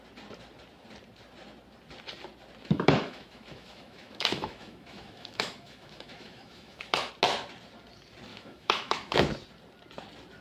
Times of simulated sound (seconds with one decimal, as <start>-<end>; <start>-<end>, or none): 2.6-7.1; 8.3-9.3